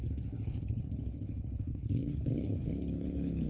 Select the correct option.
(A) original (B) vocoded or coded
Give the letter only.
B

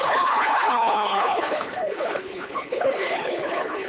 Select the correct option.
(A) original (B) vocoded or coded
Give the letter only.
B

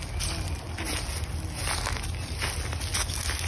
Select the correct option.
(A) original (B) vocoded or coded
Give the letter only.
A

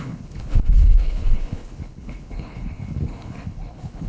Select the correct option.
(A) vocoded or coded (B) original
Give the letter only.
A